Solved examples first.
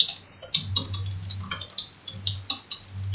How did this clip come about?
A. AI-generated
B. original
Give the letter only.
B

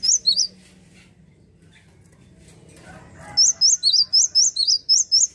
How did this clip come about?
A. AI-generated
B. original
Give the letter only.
B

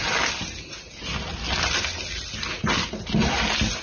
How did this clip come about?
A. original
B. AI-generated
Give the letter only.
A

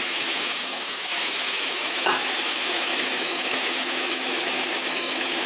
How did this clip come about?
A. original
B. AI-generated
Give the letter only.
B